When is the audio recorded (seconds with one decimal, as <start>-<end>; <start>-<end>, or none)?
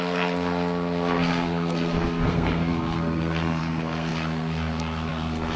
none